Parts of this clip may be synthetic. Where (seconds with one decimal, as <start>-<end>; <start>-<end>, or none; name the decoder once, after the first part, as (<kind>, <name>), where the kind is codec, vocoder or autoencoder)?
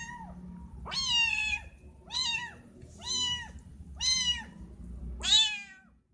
none